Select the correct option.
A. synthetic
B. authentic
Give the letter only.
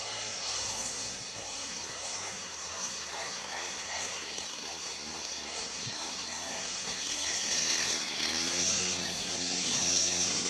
A